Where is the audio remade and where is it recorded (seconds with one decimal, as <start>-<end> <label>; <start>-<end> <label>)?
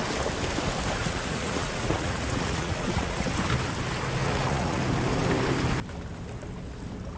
0.0-1.0 recorded; 1.0-3.3 remade; 3.3-4.2 recorded; 4.2-4.8 remade; 4.8-7.2 recorded